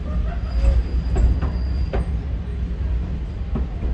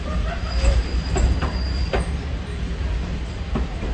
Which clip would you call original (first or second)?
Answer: first